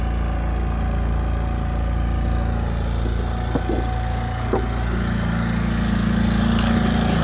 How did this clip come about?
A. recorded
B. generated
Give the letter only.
A